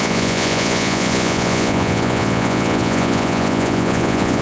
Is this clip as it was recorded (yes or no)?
no